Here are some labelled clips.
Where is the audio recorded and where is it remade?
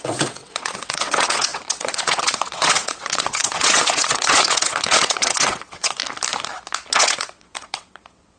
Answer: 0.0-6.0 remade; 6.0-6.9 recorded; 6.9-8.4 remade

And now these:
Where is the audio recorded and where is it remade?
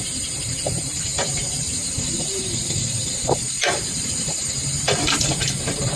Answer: 0.0-6.0 remade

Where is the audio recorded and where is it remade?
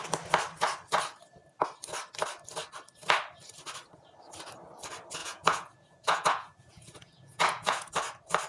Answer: 0.0-5.2 recorded; 5.2-7.9 remade; 7.9-8.5 recorded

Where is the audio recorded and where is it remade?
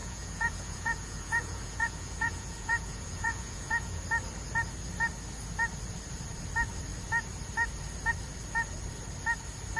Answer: 0.0-4.0 remade; 4.0-9.8 recorded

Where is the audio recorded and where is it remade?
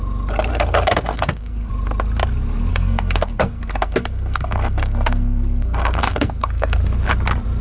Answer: 0.0-0.5 recorded; 0.5-1.7 remade; 1.7-2.7 recorded; 2.7-6.8 remade; 6.8-7.6 recorded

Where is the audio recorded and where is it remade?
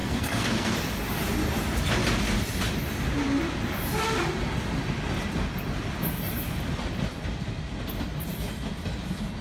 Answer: 0.0-0.7 remade; 0.7-9.4 recorded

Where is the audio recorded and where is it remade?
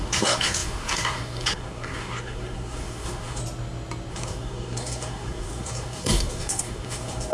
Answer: 0.0-3.4 remade; 3.4-4.1 recorded; 4.1-7.3 remade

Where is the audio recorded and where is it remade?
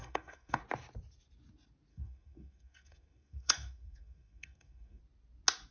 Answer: 0.0-0.6 remade; 0.6-1.9 recorded; 1.9-5.0 remade; 5.0-5.7 recorded